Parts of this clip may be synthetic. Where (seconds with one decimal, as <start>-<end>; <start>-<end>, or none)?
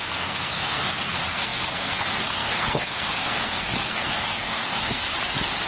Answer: 0.0-5.1